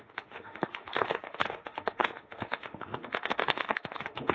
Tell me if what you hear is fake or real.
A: fake